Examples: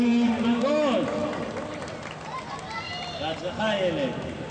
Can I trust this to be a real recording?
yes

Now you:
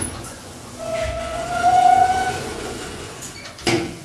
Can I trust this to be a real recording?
no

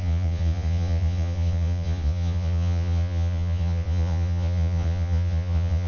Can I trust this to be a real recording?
no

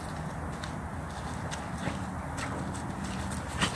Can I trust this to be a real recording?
yes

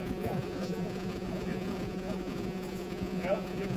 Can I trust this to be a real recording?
no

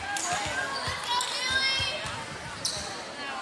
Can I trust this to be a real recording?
yes